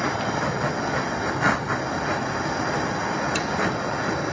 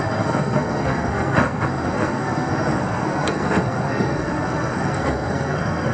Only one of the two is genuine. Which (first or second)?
first